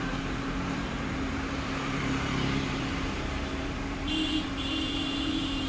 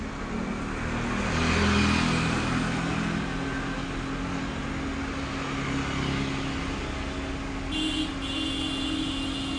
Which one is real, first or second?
second